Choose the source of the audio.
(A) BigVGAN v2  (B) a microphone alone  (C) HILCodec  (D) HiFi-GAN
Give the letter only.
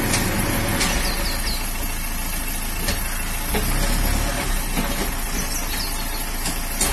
B